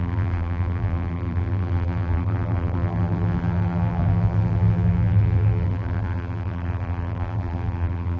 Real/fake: fake